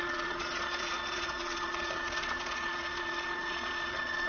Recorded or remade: remade